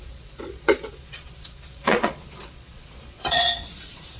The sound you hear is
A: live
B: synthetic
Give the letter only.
B